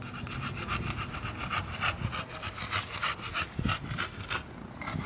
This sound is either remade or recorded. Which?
recorded